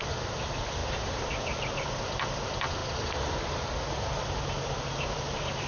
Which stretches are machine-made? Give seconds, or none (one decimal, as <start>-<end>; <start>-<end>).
0.8-2.0